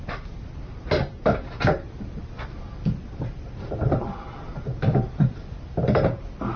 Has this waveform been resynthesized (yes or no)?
no